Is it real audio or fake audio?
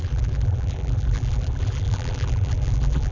fake